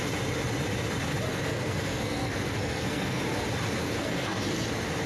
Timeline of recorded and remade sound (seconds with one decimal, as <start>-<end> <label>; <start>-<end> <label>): 0.0-1.3 recorded; 1.3-3.2 remade; 3.2-3.8 recorded; 3.8-4.4 remade; 4.4-5.1 recorded